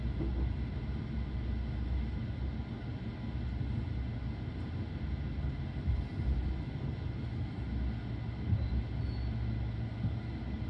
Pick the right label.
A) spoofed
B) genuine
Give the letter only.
B